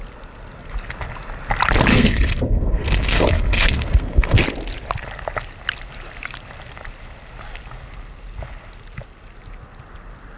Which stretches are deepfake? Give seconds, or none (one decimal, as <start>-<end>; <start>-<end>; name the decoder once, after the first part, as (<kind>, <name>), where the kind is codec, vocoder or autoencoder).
1.9-4.4 (codec, SNAC)